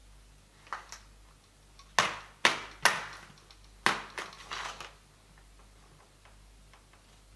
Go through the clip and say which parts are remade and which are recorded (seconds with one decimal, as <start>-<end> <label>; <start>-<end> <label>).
0.0-7.4 recorded